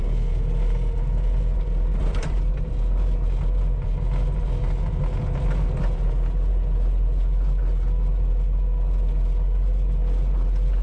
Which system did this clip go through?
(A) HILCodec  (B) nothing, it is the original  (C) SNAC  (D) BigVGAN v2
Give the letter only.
B